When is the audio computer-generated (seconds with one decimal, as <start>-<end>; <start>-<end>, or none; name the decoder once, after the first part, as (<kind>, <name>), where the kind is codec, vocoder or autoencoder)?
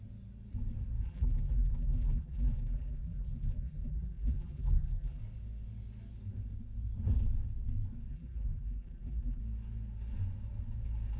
1.0-5.2 (vocoder, BigVGAN v2); 8.1-9.4